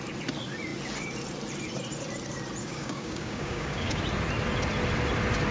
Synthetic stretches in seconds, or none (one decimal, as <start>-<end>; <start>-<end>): 2.6-4.0